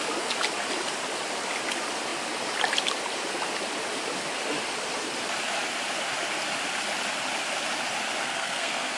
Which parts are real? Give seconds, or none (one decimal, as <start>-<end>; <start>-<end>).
0.0-8.2